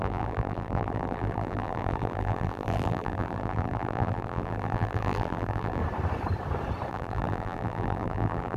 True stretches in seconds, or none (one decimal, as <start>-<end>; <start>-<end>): 5.8-6.9